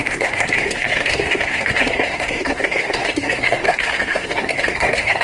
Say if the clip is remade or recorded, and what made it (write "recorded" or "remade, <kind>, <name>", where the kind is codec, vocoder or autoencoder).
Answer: remade, codec, SNAC